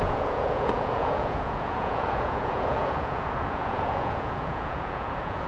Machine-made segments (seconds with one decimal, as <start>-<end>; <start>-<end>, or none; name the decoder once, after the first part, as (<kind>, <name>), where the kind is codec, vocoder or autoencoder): 0.0-5.5 (vocoder, Vocos)

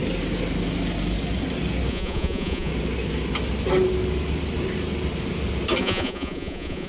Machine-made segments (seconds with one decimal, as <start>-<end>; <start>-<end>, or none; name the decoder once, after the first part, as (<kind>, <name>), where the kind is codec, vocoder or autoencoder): 1.9-2.7 (vocoder, Vocos); 5.8-6.9